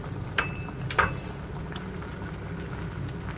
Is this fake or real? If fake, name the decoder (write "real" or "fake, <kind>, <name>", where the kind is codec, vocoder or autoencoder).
real